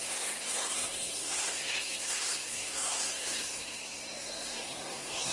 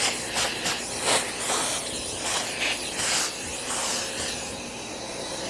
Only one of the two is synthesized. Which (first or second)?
first